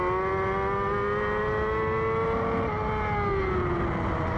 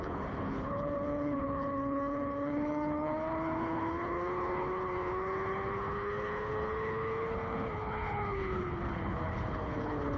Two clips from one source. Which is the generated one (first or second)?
second